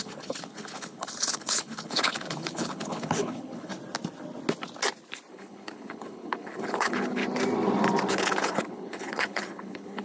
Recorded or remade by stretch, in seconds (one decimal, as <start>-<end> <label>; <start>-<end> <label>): 0.0-3.7 remade; 3.7-5.3 recorded; 5.3-7.2 remade; 7.2-8.1 recorded; 8.1-10.0 remade